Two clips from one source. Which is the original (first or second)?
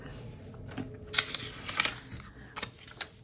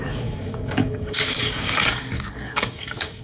first